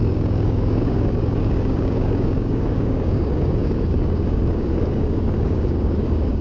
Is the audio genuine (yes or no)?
no